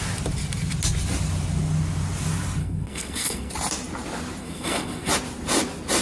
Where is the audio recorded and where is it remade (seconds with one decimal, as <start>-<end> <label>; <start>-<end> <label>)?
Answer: 0.0-2.6 recorded; 2.6-3.5 remade; 3.5-4.4 recorded; 4.4-5.1 remade; 5.1-6.0 recorded